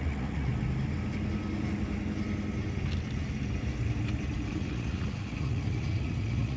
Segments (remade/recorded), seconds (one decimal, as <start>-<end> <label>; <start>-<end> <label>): 0.0-0.5 remade; 0.5-4.5 recorded; 4.5-6.6 remade